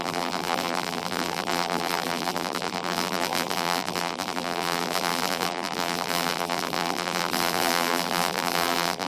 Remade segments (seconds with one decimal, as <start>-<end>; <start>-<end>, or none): 0.0-9.1